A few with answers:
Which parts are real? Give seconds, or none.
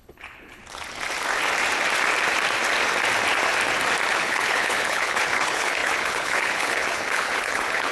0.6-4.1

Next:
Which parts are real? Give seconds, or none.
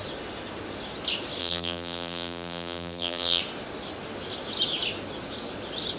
0.0-1.4; 3.4-6.0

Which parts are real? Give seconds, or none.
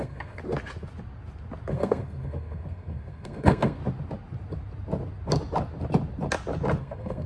0.4-1.7; 3.8-6.8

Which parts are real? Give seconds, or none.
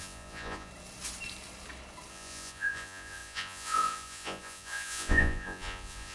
0.7-2.1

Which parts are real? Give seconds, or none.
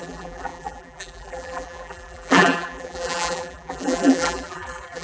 none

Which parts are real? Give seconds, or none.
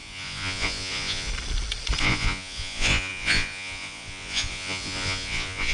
1.3-2.0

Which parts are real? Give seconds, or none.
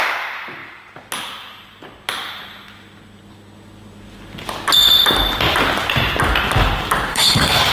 0.0-7.1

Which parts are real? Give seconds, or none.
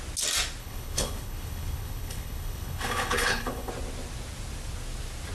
0.0-0.6; 3.7-5.3